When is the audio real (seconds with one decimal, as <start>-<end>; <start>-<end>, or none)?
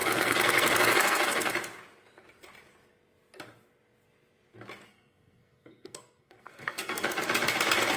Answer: 1.5-4.9; 7.2-8.0